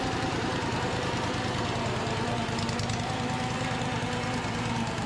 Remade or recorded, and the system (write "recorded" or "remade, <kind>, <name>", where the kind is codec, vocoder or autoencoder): recorded